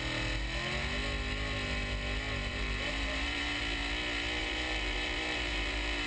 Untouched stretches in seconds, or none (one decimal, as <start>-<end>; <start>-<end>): 0.0-2.5; 3.6-4.4